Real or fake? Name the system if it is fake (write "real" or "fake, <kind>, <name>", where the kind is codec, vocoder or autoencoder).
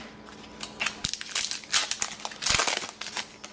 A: real